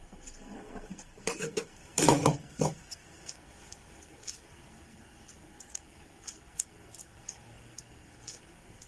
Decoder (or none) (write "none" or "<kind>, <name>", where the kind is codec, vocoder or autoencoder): codec, SNAC